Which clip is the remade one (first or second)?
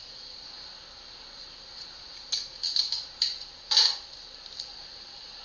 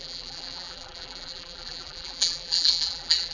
second